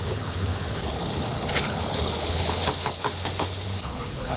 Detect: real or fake fake